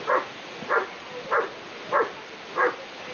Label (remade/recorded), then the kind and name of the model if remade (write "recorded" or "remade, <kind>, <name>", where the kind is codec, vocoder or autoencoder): remade, vocoder, BigVGAN v2